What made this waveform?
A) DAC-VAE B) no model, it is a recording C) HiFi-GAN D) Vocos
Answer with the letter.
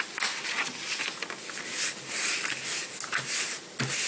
B